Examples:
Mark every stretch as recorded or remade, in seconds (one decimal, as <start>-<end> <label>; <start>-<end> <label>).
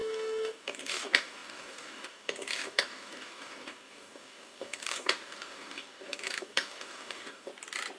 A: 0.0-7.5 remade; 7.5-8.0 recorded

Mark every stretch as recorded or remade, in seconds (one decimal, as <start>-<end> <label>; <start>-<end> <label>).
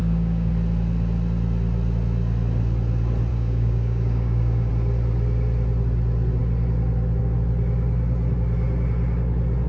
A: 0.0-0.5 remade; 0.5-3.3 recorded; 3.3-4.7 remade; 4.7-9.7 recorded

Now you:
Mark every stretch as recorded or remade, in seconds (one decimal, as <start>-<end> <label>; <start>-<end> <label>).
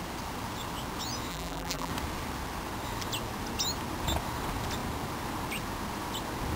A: 0.0-1.3 recorded; 1.3-1.9 remade; 1.9-6.6 recorded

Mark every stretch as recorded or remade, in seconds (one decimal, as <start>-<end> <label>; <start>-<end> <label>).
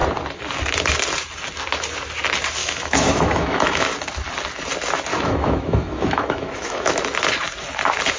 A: 0.0-2.6 recorded; 2.6-3.9 remade; 3.9-5.1 recorded; 5.1-7.0 remade; 7.0-8.2 recorded